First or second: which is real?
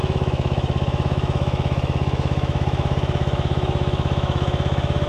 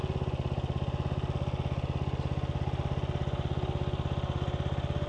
second